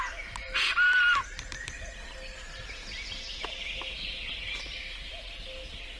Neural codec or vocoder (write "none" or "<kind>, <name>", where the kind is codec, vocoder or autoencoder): none